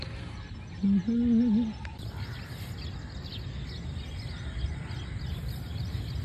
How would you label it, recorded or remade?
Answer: recorded